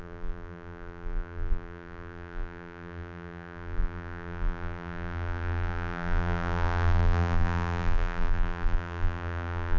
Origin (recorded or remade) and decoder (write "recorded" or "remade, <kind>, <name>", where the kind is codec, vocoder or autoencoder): remade, vocoder, BigVGAN v2